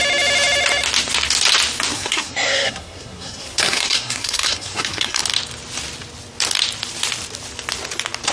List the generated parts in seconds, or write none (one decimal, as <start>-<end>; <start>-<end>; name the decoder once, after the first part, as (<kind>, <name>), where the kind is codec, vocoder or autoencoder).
1.9-5.2 (codec, SNAC)